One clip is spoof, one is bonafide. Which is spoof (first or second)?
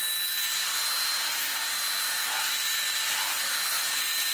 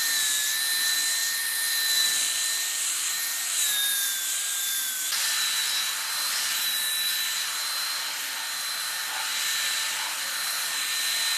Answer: second